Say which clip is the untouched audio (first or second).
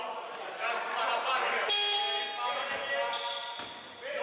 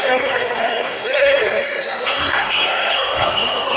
first